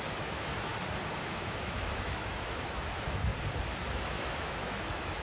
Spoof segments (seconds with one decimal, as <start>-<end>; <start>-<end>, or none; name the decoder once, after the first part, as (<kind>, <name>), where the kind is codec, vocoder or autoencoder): 0.0-0.7 (autoencoder, DAC-VAE); 1.2-3.3; 3.9-5.2